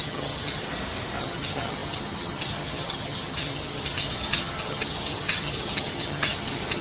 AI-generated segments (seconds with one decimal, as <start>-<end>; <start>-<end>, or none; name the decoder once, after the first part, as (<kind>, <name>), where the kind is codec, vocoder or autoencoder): 0.0-0.7 (vocoder, HiFi-GAN); 1.2-6.8